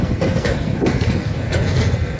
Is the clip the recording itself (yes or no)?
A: no